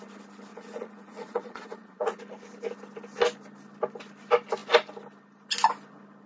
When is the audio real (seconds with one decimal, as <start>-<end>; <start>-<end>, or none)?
0.0-0.5; 2.2-6.3